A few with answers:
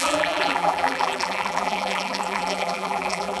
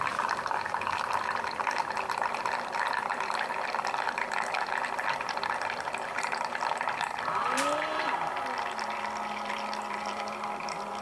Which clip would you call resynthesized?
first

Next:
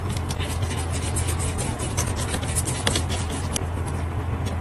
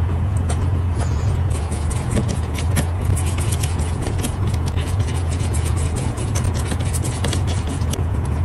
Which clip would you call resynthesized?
second